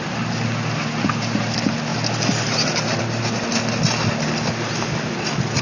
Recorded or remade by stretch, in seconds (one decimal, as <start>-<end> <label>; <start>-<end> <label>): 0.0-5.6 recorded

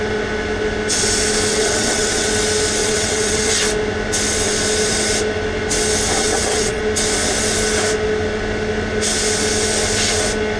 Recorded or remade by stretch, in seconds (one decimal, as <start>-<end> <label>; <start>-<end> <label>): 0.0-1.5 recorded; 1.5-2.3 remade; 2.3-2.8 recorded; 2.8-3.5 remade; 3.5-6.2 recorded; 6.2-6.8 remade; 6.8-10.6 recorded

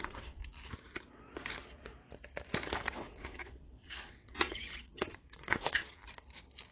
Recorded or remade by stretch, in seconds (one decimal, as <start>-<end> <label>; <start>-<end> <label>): 0.0-0.4 remade; 0.4-2.9 recorded; 2.9-6.0 remade; 6.0-6.7 recorded

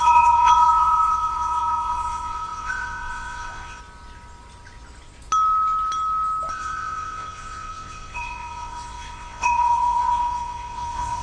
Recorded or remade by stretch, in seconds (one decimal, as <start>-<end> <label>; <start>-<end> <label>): 0.0-3.8 remade; 3.8-6.5 recorded; 6.5-11.2 remade

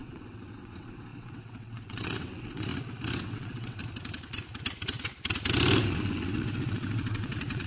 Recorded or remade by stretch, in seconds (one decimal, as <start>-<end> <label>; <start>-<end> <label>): 0.0-2.7 remade; 2.7-3.2 recorded; 3.2-3.8 remade; 3.8-5.9 recorded; 5.9-7.7 remade

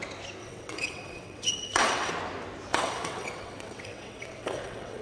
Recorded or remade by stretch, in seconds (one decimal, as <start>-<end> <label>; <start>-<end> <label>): 0.0-0.4 recorded; 0.4-2.1 remade; 2.1-2.7 recorded; 2.7-5.0 remade

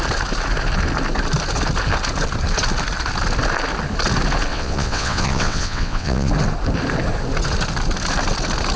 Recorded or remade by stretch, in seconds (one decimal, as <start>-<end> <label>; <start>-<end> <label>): 0.0-4.5 recorded; 4.5-6.3 remade; 6.3-8.8 recorded